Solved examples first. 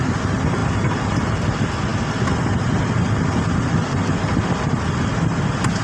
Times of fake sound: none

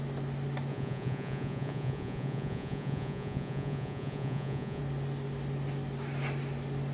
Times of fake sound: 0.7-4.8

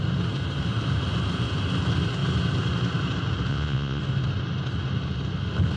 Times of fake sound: 3.5-4.0